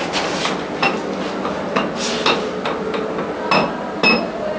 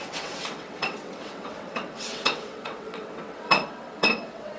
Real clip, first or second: first